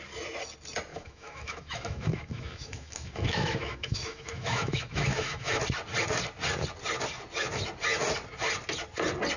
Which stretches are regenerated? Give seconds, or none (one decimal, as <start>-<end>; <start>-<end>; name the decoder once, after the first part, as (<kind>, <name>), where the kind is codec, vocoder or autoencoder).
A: 0.9-5.6 (autoencoder, DAC-VAE)